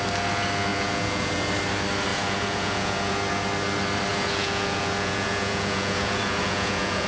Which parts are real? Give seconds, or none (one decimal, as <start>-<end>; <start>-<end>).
0.0-0.7; 1.5-2.1; 3.1-4.1